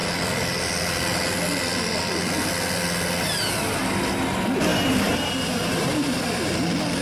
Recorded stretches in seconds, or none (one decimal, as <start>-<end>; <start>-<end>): 0.0-4.7; 6.5-7.0